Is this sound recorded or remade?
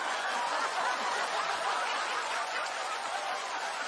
remade